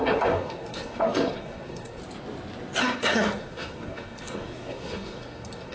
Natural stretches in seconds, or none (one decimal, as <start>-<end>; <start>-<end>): 2.0-2.8